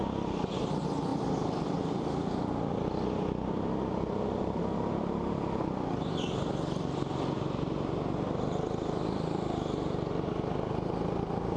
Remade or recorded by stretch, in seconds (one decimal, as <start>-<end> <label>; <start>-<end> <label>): 0.0-11.6 recorded